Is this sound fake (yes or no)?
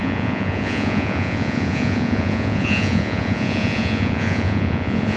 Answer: yes